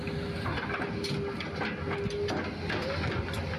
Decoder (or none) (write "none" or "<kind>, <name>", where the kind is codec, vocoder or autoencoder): none